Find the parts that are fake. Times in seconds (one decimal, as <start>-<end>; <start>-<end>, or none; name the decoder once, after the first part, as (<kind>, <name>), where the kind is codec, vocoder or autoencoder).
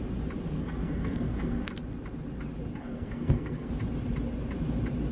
0.6-1.7 (codec, SNAC); 2.8-3.7